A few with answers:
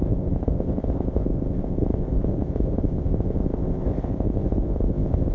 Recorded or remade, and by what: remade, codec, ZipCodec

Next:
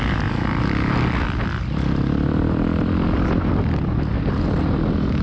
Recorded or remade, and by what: recorded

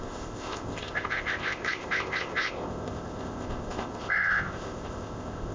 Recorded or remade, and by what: remade, codec, ZipCodec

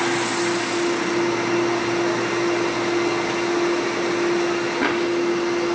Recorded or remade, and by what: recorded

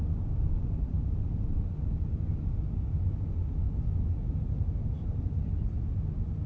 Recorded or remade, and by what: recorded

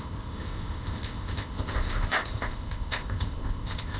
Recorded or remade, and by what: remade, codec, ZipCodec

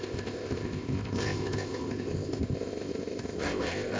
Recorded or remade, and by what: remade, codec, ZipCodec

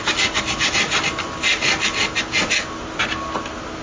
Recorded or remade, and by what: recorded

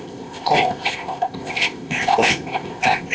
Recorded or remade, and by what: remade, codec, ZipCodec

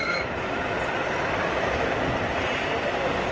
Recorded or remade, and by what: recorded